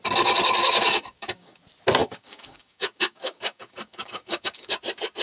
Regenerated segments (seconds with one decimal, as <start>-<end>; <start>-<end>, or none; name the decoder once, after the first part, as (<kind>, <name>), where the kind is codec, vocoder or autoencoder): 0.7-1.6 (codec, DAC); 2.0-4.8